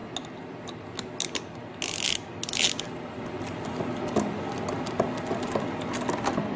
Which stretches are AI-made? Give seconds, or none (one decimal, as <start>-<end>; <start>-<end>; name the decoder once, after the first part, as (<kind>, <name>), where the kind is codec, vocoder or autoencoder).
none